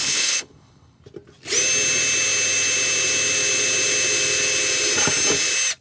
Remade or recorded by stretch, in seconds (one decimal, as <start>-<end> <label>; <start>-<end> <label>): 0.0-1.0 remade; 1.0-5.8 recorded